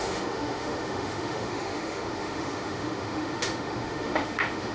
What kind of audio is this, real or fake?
fake